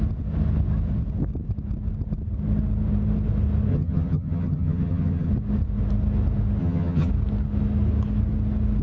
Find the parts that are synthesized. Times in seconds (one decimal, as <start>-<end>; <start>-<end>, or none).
3.7-5.3; 6.6-7.1